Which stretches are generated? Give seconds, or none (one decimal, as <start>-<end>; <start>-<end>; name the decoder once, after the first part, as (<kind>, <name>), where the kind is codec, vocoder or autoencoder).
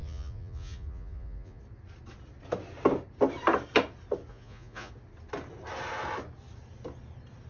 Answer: 0.0-1.6 (vocoder, Vocos); 4.3-4.9